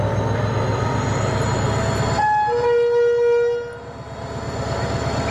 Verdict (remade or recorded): recorded